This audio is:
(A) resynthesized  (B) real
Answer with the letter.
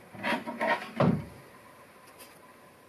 B